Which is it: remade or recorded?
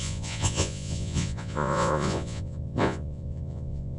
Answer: remade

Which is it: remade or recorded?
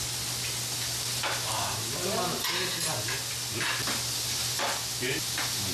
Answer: recorded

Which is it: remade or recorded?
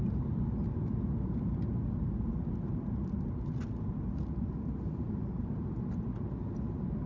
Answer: recorded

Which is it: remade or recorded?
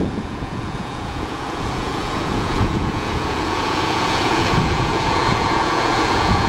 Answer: remade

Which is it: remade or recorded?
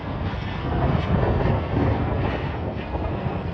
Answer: remade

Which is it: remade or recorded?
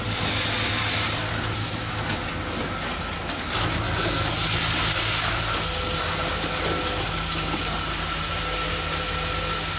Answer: recorded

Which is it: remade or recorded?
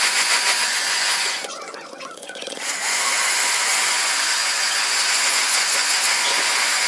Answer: remade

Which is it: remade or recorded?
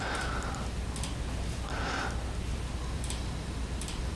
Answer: recorded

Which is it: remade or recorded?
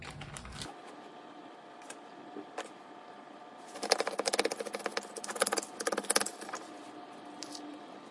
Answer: recorded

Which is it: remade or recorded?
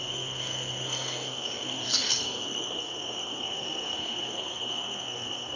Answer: remade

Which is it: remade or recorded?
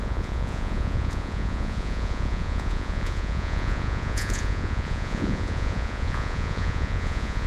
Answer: remade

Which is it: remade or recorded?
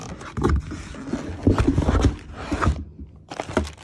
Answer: recorded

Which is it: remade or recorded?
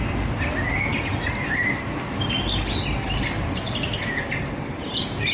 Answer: recorded